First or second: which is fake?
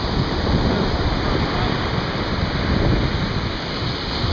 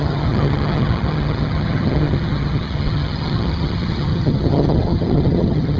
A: second